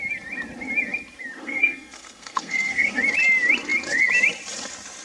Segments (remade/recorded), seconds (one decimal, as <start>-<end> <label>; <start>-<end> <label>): 0.0-1.4 recorded; 1.4-3.0 remade; 3.0-5.0 recorded